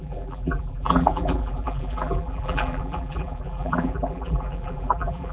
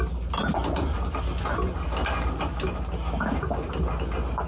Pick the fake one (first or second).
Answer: first